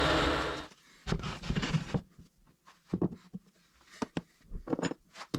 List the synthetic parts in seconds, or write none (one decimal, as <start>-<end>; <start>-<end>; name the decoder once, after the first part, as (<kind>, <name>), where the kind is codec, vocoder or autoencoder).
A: 1.0-1.7 (codec, DAC)